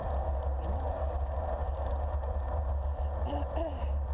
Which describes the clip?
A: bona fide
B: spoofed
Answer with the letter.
A